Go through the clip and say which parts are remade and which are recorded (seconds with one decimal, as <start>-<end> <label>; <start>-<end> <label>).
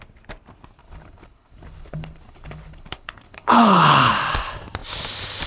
0.0-0.8 recorded; 0.8-4.1 remade; 4.1-5.5 recorded